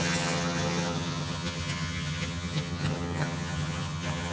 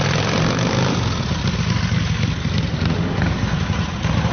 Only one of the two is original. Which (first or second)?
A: second